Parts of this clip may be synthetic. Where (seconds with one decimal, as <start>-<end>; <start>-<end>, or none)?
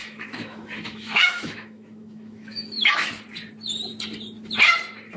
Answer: 0.0-3.1